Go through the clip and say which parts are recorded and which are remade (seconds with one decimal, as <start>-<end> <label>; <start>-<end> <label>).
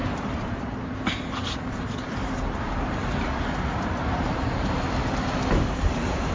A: 0.0-0.9 remade; 0.9-2.2 recorded; 2.2-6.3 remade